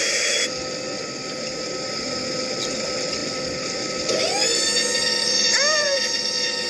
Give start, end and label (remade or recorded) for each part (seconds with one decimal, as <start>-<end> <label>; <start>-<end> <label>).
0.0-6.7 recorded